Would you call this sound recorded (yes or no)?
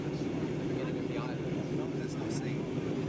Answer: yes